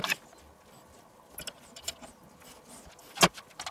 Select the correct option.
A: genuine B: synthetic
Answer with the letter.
A